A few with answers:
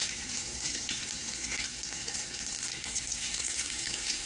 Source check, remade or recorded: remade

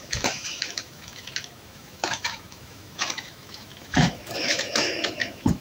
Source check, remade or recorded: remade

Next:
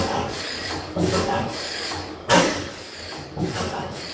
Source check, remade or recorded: remade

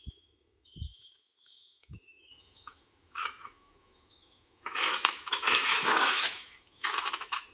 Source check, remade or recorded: remade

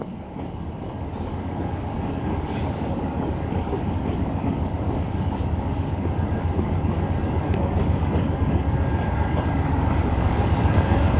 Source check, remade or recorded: remade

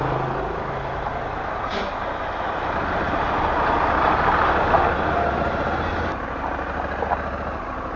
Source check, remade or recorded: recorded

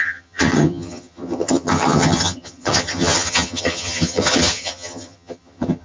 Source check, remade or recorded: remade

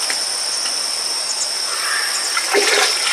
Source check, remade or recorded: recorded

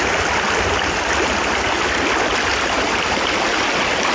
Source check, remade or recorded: recorded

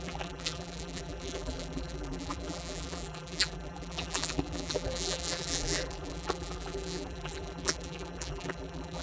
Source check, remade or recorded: remade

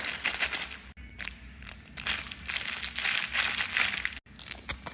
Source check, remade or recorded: recorded